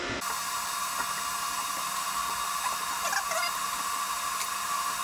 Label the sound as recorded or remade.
recorded